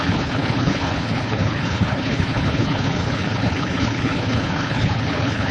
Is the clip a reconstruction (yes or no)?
yes